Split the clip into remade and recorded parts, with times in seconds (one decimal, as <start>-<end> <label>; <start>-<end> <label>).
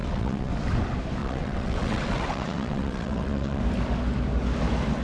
0.0-0.5 remade; 0.5-1.2 recorded; 1.2-3.6 remade; 3.6-5.0 recorded